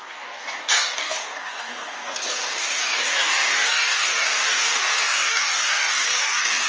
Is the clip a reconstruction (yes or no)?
yes